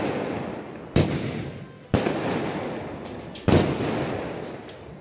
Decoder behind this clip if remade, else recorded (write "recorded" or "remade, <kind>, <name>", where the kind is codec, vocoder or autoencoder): recorded